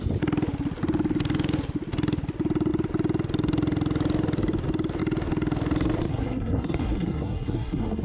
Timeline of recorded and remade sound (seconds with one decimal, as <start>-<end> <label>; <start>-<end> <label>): 0.0-6.1 recorded; 6.1-8.0 remade